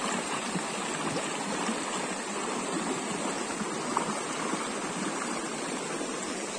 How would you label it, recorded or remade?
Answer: recorded